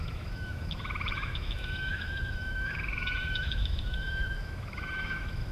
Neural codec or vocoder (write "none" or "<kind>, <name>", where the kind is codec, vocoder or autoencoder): autoencoder, DAC-VAE